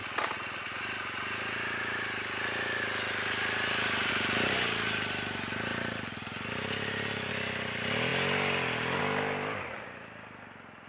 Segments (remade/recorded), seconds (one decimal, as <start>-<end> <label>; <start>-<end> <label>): 0.0-10.9 recorded

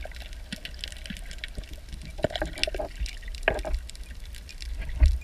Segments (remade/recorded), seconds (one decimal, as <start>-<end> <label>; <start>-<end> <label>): 0.0-5.2 recorded

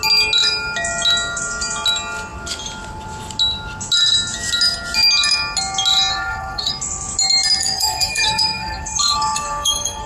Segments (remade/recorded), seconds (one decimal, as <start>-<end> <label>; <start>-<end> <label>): 0.0-6.1 recorded; 6.1-6.7 remade; 6.7-7.6 recorded; 7.6-10.1 remade

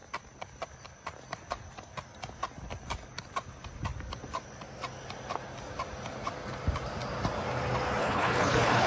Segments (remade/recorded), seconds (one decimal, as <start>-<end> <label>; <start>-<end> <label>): 0.0-8.0 recorded; 8.0-8.9 remade

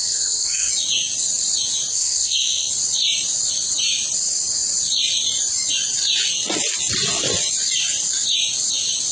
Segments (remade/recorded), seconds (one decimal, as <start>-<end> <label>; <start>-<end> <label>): 0.0-0.7 remade; 0.7-1.9 recorded; 1.9-2.7 remade; 2.7-9.1 recorded

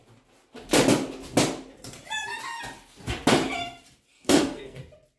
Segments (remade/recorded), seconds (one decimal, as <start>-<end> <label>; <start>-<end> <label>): 0.0-4.1 recorded; 4.1-4.8 remade; 4.8-5.2 recorded